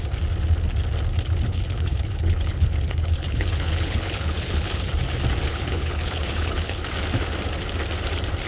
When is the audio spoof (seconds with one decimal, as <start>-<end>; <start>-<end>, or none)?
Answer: 1.5-4.9; 5.5-6.8